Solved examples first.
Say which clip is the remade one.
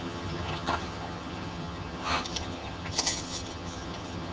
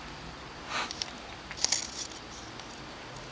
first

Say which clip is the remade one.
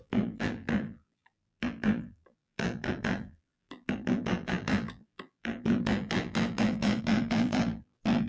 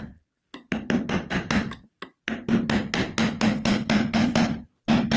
first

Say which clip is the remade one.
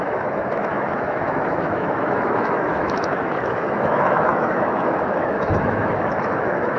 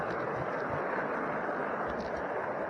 first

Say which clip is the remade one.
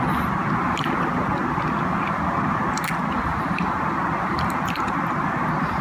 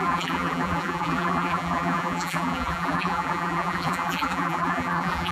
second